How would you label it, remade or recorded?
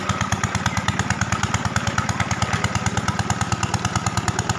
recorded